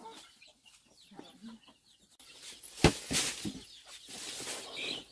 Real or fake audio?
real